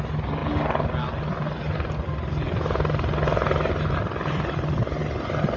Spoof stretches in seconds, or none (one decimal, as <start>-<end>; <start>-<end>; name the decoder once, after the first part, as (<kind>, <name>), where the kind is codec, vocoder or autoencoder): none